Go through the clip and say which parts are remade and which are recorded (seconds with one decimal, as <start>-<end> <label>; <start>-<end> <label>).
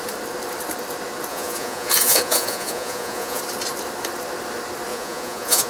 0.0-1.3 recorded; 1.3-3.4 remade; 3.4-4.9 recorded; 4.9-5.7 remade